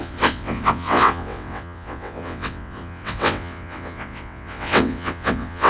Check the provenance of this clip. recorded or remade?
remade